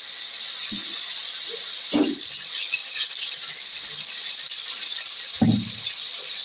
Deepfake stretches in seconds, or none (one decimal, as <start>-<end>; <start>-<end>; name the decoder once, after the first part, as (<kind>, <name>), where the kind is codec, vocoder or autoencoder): none